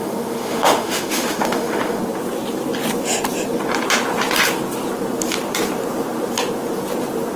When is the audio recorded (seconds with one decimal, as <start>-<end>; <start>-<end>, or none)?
2.0-7.4